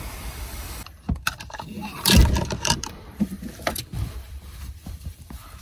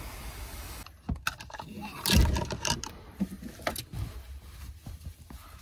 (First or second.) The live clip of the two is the second